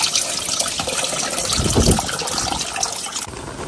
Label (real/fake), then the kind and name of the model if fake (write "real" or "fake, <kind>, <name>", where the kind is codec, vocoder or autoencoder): real